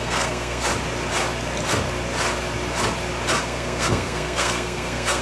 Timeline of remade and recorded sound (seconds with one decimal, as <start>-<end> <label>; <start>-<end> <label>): 0.0-0.7 remade; 0.7-3.4 recorded; 3.4-5.2 remade